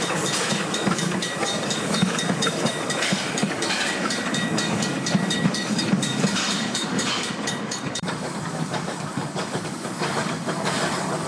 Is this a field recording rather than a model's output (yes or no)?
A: no